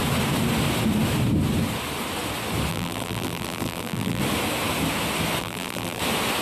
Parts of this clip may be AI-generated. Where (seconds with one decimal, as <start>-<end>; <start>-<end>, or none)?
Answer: 2.7-4.2; 5.4-6.0